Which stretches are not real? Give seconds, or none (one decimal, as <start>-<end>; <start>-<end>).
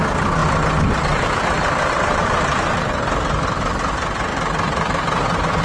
none